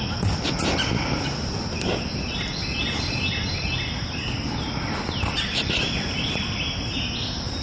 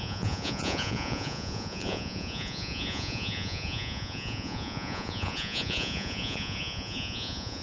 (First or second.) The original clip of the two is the first